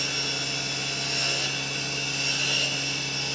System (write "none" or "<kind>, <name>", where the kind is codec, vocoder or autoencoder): none